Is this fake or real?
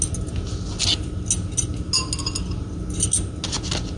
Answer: real